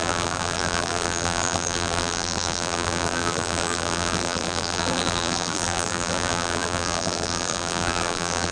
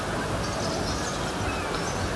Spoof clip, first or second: first